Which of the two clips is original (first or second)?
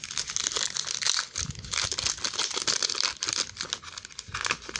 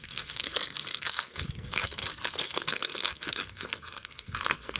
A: first